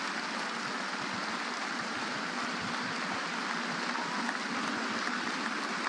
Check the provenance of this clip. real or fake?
real